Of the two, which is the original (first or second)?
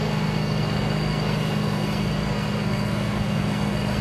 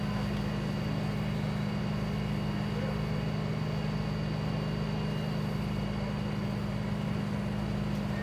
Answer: second